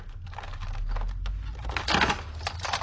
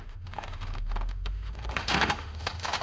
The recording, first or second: first